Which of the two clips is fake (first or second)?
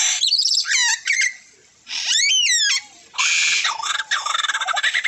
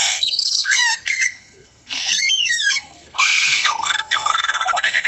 second